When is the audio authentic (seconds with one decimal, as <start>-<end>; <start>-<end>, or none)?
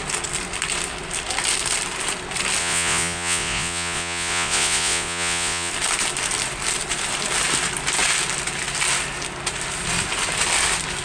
0.0-2.6; 5.7-11.0